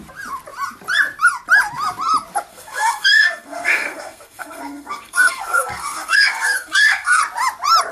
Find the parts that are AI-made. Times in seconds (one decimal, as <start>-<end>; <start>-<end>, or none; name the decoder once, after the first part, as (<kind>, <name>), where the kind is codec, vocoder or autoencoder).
2.5-7.2 (codec, SNAC)